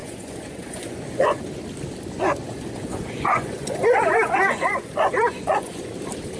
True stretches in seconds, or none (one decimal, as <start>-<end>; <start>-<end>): 1.5-2.4; 5.9-6.4